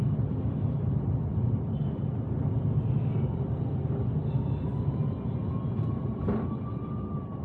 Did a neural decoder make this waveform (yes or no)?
no